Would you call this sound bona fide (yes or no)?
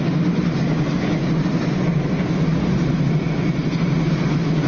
yes